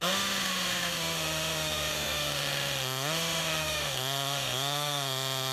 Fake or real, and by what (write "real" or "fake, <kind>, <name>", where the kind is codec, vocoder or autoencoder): fake, autoencoder, DAC-VAE